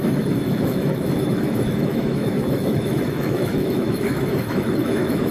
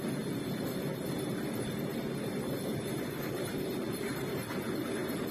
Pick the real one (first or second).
second